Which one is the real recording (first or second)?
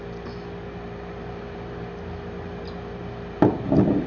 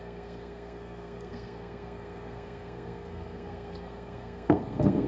first